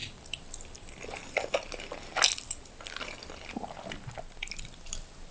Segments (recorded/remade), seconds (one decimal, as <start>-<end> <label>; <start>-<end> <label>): 0.0-5.3 recorded